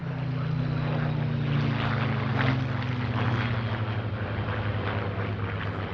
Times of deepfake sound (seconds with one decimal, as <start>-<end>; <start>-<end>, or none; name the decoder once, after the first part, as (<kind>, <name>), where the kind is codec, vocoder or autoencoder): none